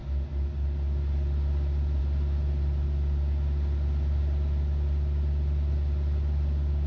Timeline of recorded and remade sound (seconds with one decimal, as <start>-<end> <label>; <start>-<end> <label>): 0.0-6.9 recorded